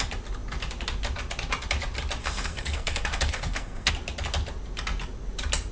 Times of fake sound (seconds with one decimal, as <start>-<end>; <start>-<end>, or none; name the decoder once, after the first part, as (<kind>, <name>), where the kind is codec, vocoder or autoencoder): 2.2-3.9 (codec, SNAC)